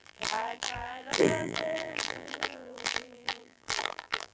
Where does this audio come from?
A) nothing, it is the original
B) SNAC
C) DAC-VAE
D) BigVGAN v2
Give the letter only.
D